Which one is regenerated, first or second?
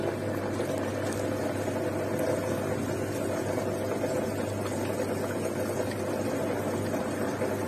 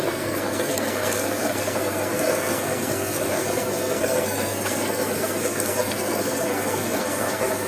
second